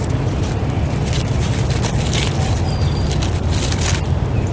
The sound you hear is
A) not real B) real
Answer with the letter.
A